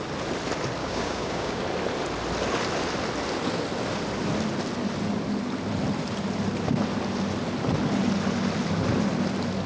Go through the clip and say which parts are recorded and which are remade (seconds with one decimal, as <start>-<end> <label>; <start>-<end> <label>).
0.0-0.8 recorded; 0.8-1.6 remade; 1.6-9.7 recorded